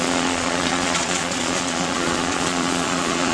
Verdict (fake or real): fake